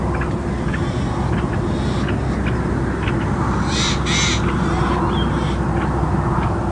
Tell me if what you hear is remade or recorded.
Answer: recorded